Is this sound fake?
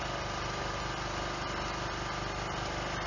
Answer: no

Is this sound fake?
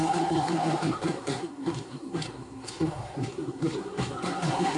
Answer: yes